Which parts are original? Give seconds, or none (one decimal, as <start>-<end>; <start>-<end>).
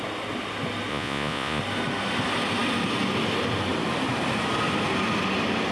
0.0-0.9; 1.6-5.7